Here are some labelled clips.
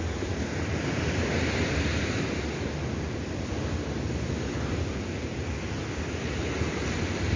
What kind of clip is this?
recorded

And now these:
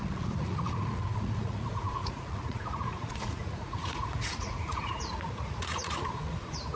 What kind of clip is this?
remade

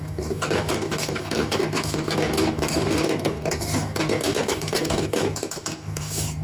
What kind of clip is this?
remade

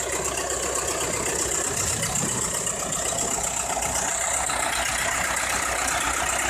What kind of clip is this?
recorded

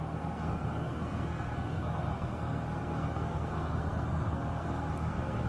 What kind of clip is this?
remade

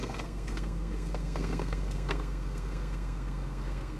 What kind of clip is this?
remade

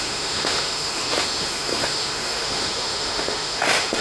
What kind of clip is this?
remade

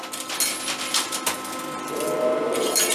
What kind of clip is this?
recorded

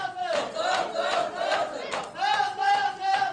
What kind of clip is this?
recorded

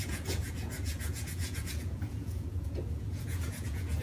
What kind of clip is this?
remade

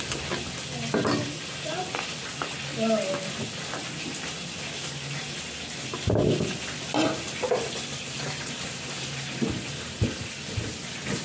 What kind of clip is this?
recorded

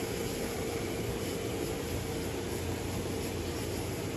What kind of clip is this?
remade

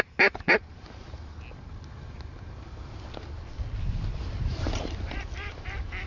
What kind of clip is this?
recorded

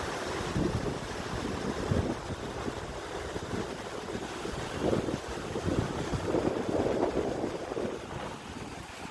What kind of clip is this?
recorded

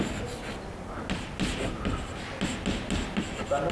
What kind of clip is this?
recorded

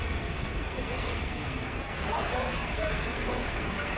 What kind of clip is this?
remade